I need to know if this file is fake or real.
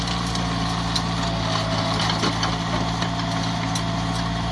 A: real